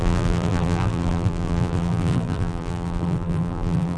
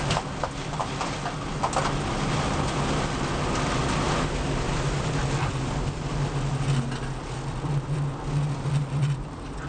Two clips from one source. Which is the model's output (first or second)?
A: first